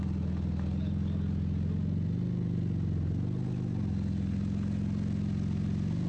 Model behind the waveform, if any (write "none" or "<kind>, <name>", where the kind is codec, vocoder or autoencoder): none